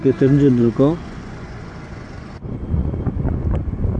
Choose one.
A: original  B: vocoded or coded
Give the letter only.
B